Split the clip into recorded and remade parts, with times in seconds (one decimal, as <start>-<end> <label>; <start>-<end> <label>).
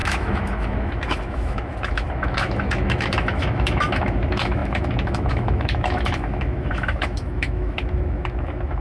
0.0-8.8 remade